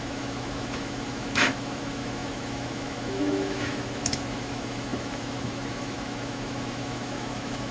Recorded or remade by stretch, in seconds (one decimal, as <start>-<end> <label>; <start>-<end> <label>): 0.0-7.7 remade